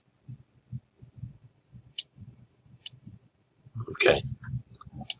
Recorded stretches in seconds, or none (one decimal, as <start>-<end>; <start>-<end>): 0.0-1.3; 4.2-5.2